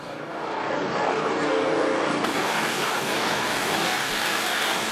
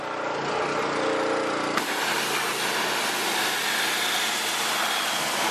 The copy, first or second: first